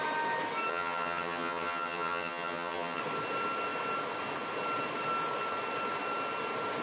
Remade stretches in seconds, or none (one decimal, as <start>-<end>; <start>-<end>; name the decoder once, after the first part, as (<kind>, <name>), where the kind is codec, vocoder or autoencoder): 0.7-3.0 (vocoder, HiFi-GAN)